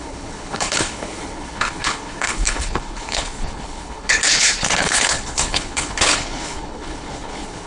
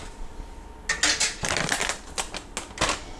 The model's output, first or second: first